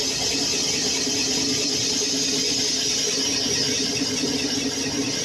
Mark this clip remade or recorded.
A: recorded